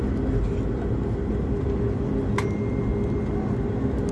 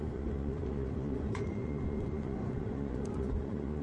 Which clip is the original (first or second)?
first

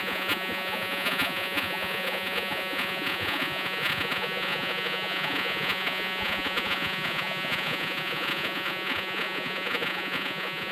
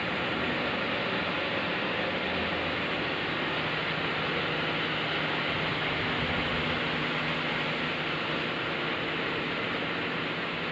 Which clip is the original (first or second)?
second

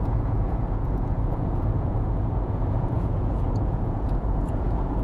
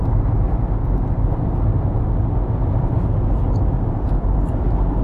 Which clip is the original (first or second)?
second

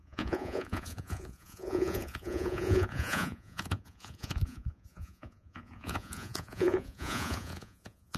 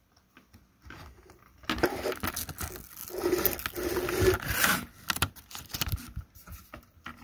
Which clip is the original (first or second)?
second